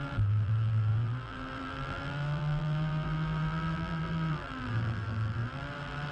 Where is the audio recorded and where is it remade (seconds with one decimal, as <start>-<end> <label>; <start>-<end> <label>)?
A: 0.0-6.1 remade